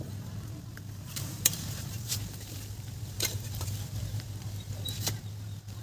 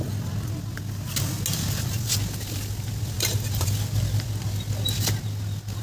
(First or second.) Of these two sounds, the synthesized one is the first